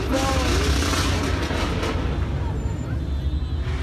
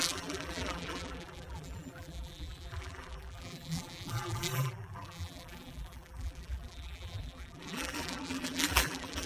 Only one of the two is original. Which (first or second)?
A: first